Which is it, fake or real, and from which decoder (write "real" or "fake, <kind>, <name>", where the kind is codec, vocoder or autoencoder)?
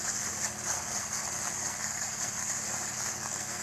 fake, codec, SNAC